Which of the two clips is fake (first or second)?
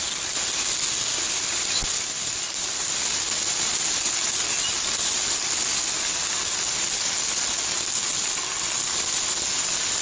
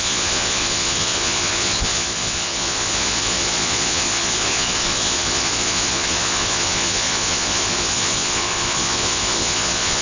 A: second